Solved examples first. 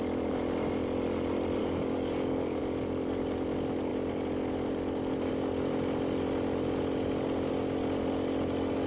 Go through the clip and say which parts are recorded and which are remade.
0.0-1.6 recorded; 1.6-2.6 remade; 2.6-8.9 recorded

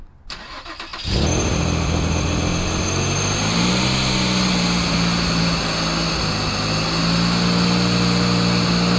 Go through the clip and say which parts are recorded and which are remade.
0.0-9.0 recorded

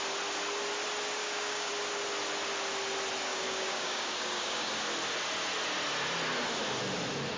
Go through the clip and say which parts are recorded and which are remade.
0.0-1.2 recorded; 1.2-1.7 remade; 1.7-3.3 recorded; 3.3-4.7 remade; 4.7-7.4 recorded